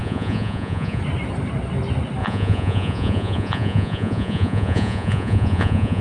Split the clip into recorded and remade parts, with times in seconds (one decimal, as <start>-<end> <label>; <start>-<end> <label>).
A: 0.0-1.0 remade; 1.0-2.2 recorded; 2.2-6.0 remade